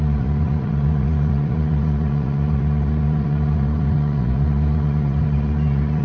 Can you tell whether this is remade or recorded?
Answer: remade